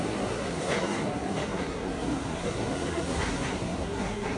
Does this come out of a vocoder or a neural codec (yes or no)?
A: yes